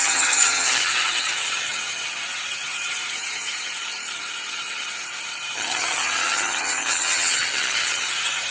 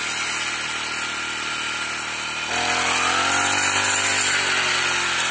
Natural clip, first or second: second